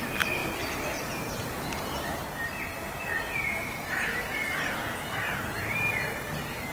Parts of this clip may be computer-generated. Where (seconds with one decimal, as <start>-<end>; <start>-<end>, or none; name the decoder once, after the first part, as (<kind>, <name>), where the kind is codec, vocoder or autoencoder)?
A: 0.4-2.2 (vocoder, BigVGAN v2); 4.3-5.9